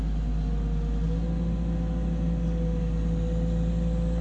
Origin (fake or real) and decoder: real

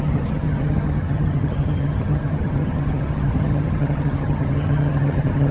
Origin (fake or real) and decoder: fake, vocoder, HiFi-GAN